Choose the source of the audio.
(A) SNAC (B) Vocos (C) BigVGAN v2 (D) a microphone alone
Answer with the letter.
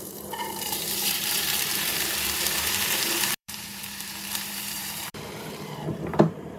C